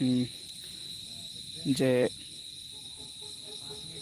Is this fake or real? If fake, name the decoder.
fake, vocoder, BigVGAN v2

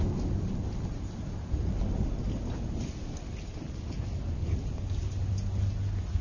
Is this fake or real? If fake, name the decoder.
real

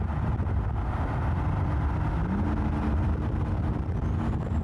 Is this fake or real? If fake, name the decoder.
real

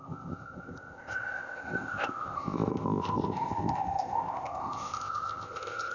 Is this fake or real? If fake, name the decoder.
fake, codec, ZipCodec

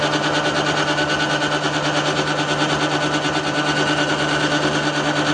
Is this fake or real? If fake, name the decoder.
real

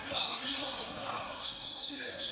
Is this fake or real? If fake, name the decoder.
fake, codec, SNAC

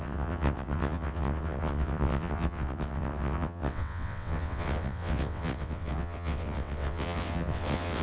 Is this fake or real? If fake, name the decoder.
fake, vocoder, WaveNeXt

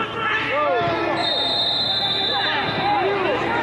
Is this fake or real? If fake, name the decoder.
real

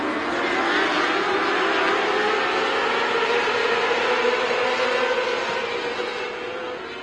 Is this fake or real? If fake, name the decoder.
real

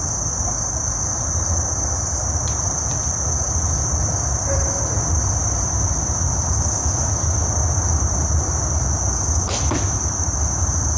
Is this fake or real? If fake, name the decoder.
real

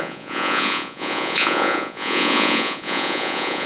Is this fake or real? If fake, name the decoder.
fake, vocoder, Vocos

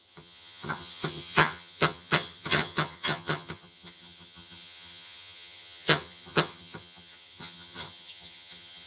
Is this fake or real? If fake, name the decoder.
fake, vocoder, HiFi-GAN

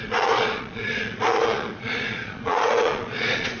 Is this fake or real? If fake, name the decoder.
fake, vocoder, Vocos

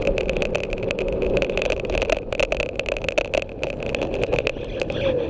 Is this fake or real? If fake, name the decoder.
real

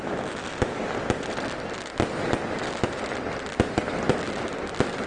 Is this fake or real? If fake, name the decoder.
real